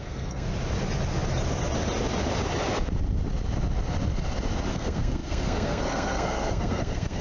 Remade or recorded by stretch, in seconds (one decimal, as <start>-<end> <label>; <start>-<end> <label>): 0.0-0.5 remade; 0.5-4.7 recorded; 4.7-7.2 remade